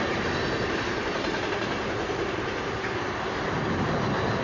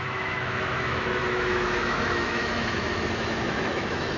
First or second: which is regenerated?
second